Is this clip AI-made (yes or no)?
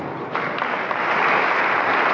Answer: no